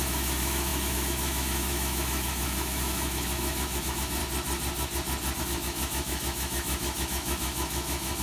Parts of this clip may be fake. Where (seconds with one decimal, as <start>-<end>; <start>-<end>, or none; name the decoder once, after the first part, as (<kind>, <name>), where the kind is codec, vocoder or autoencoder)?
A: 0.0-4.2 (autoencoder, DAC-VAE); 5.4-8.2